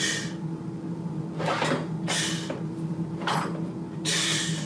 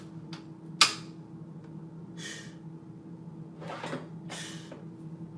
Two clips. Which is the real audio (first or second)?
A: second